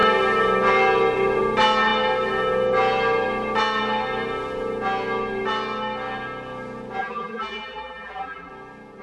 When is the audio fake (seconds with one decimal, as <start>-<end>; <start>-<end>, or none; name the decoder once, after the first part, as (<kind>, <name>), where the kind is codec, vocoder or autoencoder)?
7.0-8.5 (vocoder, BigVGAN v2)